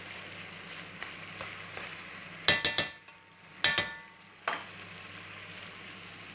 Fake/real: real